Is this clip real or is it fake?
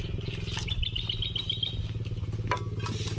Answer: real